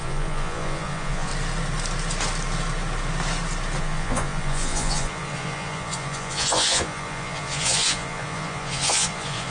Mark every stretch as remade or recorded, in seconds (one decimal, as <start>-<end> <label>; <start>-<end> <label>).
0.0-1.3 remade; 1.3-3.8 recorded; 3.8-9.5 remade